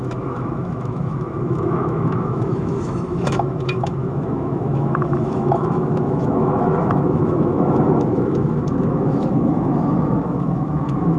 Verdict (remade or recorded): remade